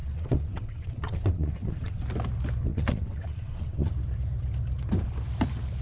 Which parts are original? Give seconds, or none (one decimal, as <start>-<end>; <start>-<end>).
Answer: 2.0-2.7; 3.9-5.8

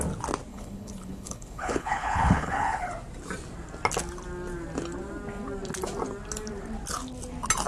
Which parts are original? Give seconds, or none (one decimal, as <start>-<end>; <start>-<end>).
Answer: 0.0-0.5; 2.9-7.7

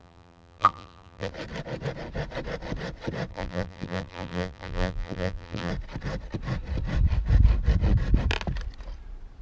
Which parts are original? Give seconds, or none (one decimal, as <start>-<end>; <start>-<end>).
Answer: 1.3-3.3; 5.7-9.4

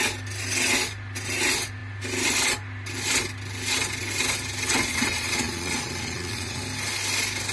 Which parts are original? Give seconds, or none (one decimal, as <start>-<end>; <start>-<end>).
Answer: 0.0-4.9; 6.6-7.5

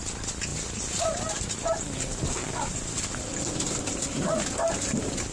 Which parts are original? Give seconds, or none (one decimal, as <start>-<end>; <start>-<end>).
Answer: 0.0-5.3